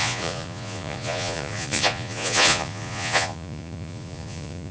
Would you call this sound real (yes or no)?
no